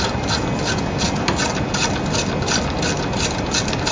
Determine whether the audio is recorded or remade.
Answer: recorded